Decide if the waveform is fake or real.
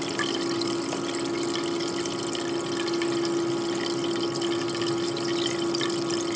real